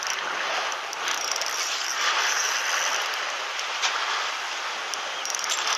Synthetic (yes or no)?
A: no